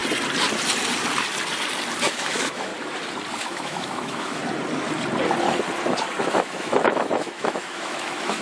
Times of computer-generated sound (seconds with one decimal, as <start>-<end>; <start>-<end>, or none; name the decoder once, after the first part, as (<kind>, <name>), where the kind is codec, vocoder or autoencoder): 2.1-2.7 (autoencoder, DAC-VAE); 3.4-4.4; 6.2-8.4